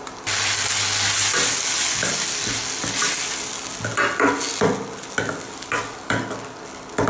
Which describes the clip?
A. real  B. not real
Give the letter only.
A